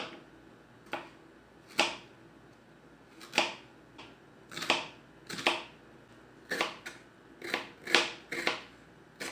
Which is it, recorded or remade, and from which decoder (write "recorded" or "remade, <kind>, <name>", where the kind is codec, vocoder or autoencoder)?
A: recorded